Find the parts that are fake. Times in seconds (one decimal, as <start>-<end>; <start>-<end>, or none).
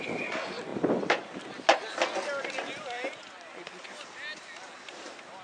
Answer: none